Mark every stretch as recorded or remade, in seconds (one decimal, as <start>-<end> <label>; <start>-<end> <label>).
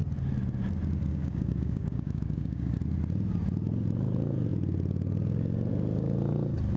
0.0-1.1 recorded; 1.1-2.8 remade; 2.8-6.8 recorded